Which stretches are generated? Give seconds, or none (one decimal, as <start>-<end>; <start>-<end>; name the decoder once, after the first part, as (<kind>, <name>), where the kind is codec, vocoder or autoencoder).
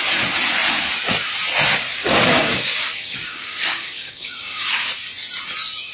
2.0-4.9 (codec, DAC)